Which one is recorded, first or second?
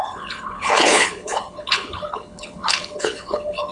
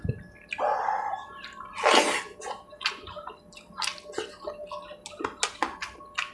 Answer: second